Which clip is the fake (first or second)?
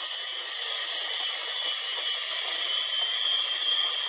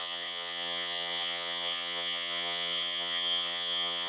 second